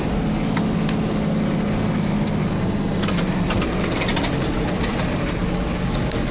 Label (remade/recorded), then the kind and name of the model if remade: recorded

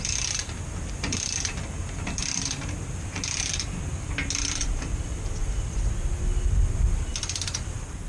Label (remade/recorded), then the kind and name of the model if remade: recorded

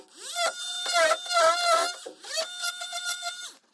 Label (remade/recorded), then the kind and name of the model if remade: recorded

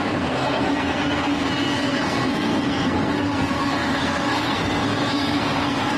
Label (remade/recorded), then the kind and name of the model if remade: remade, codec, SNAC